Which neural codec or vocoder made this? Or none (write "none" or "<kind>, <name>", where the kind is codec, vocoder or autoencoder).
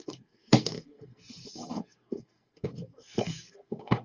codec, SNAC